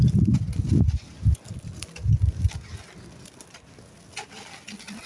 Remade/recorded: recorded